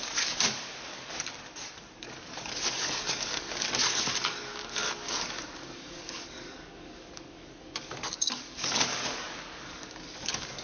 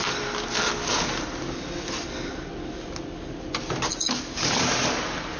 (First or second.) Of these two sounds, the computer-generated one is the first